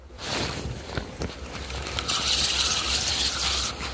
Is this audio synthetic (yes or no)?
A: yes